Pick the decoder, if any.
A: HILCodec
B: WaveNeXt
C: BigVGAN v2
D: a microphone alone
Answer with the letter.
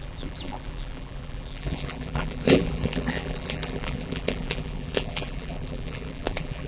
C